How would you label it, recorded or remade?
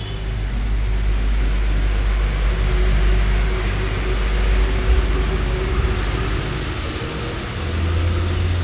recorded